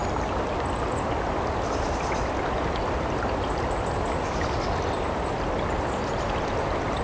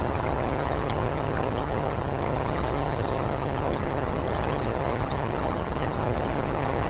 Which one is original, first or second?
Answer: first